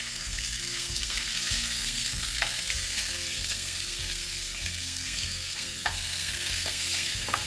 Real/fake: fake